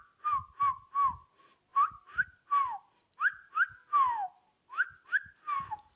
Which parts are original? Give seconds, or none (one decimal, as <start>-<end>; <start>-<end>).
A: 0.0-1.7; 5.3-6.0